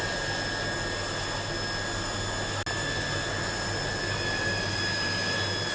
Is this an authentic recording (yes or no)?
yes